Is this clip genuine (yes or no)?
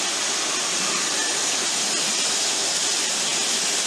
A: yes